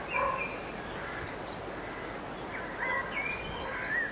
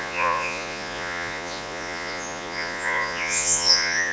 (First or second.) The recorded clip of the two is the first